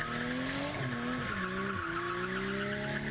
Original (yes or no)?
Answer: yes